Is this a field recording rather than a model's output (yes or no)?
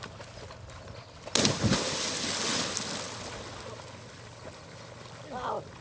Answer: yes